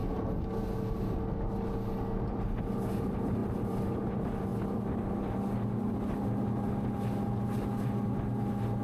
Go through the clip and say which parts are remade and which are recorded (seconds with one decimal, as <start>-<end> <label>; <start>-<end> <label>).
0.0-3.4 recorded; 3.4-4.1 remade; 4.1-8.8 recorded